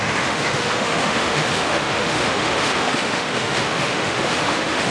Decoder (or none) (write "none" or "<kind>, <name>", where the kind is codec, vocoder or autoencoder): autoencoder, DAC-VAE